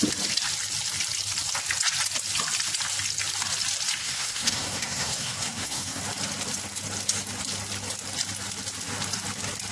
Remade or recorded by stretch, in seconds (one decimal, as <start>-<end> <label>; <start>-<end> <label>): 0.0-4.0 recorded; 4.0-6.0 remade; 6.0-9.7 recorded